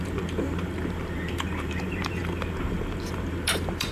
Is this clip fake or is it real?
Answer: fake